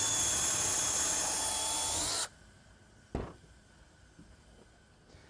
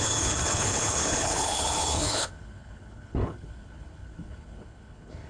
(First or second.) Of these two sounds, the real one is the first